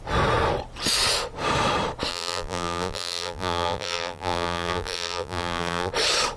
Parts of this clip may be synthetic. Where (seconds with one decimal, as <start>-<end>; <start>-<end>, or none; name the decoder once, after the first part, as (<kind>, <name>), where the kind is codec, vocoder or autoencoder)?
2.1-5.9 (vocoder, BigVGAN v2)